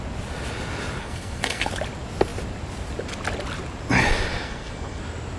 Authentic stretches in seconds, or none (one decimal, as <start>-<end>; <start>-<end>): 0.0-1.0; 1.7-4.3; 5.0-5.4